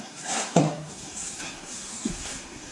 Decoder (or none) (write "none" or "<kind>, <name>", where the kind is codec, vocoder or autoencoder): codec, SNAC